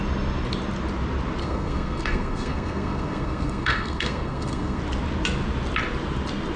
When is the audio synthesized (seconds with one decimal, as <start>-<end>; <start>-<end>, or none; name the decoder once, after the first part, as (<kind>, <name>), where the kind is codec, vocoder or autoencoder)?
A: 1.4-4.8 (codec, SNAC)